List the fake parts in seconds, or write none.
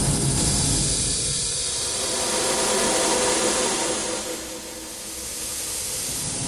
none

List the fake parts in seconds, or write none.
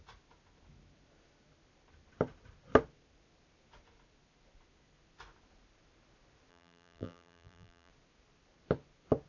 6.5-7.9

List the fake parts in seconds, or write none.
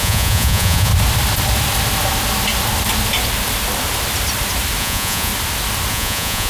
0.0-0.9; 4.8-5.3; 5.9-6.5